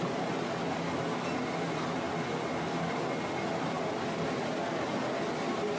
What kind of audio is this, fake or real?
real